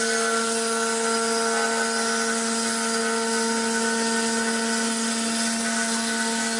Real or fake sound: real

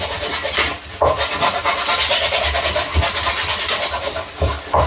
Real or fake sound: real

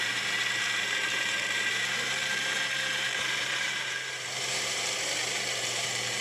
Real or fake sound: fake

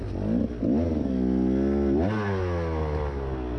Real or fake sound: real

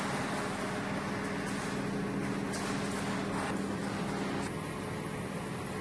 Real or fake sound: real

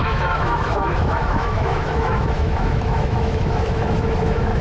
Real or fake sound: fake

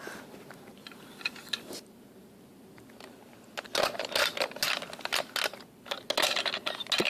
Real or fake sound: real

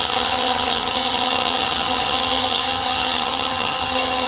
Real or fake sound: fake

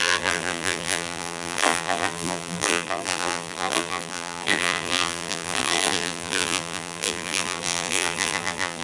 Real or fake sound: fake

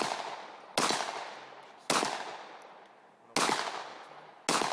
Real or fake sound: real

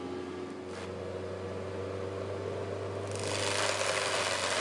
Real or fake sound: real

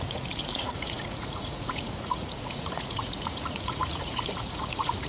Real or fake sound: fake